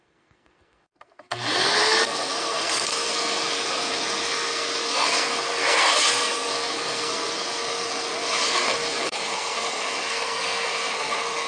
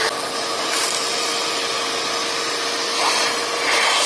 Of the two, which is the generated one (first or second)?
first